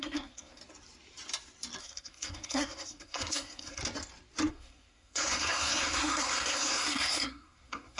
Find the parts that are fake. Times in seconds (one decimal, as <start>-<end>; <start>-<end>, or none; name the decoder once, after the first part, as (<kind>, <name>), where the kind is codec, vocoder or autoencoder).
0.0-0.6 (codec, SNAC); 1.8-3.8; 4.5-8.0